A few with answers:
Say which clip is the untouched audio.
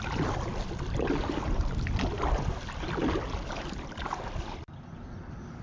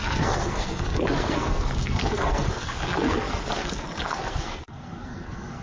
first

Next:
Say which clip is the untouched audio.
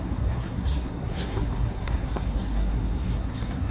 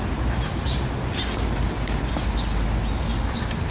second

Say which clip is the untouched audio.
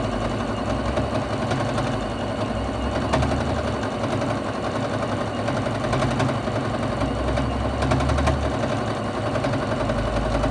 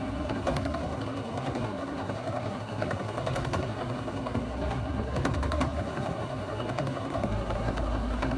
first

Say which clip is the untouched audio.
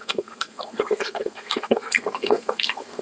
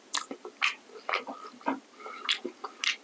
second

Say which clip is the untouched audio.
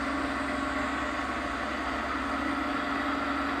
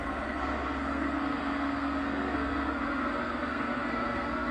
first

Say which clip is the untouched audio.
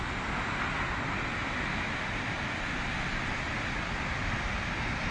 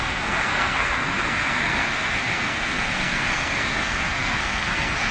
first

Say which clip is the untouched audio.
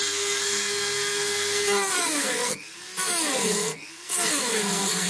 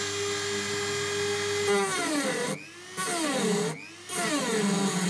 second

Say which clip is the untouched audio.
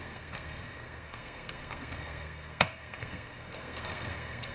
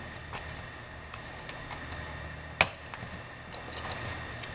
second